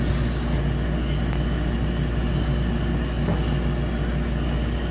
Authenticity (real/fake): real